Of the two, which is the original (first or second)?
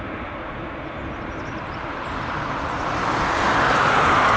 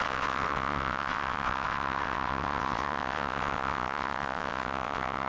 first